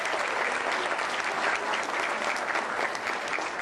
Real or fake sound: real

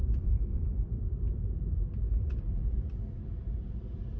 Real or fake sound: fake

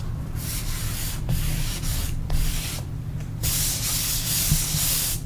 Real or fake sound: fake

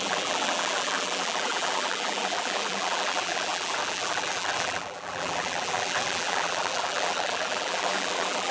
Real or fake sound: fake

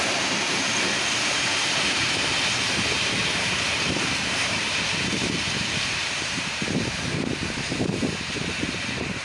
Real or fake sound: fake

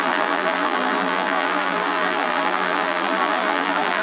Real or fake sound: fake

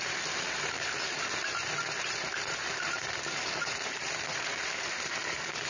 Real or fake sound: fake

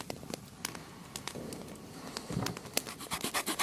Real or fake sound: real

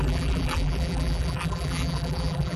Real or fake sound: fake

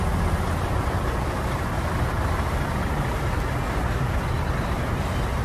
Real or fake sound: real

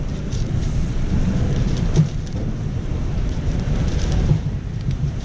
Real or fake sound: fake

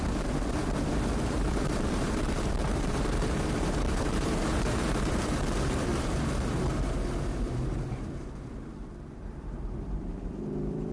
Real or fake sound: fake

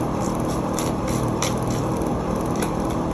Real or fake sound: fake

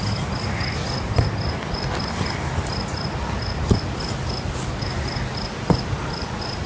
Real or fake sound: real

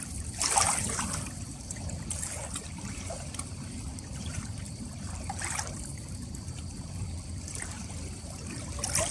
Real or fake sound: fake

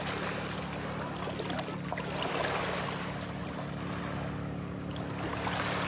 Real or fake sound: real